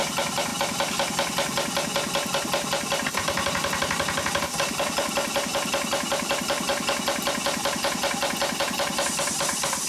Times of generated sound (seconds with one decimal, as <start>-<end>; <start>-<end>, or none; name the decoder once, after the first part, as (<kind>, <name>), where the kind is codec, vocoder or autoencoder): 0.0-0.5 (vocoder, BigVGAN v2); 3.1-6.7; 8.6-9.9